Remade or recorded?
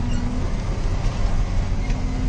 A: recorded